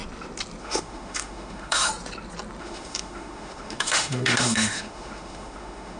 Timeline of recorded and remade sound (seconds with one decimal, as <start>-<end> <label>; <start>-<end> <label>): 0.0-0.6 recorded; 0.6-1.9 remade; 1.9-2.6 recorded; 2.6-6.0 remade